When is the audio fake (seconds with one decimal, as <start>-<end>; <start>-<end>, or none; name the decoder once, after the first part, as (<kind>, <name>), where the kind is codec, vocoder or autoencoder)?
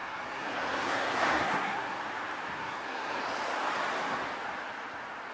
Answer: 0.0-2.0 (codec, SNAC); 2.6-3.2